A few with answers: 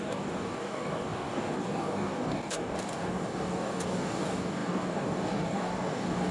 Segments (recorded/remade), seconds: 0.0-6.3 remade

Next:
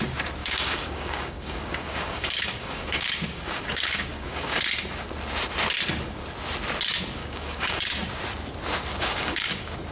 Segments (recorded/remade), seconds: 0.0-0.4 recorded; 0.4-4.6 remade; 4.6-7.2 recorded; 7.2-8.2 remade; 8.2-8.9 recorded; 8.9-9.9 remade

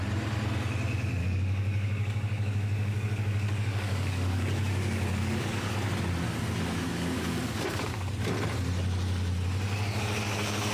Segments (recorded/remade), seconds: 0.0-1.2 recorded; 1.2-5.7 remade; 5.7-6.9 recorded; 6.9-8.1 remade; 8.1-10.7 recorded

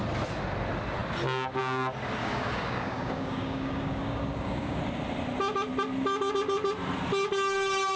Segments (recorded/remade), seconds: 0.0-2.2 recorded; 2.2-4.8 remade; 4.8-8.0 recorded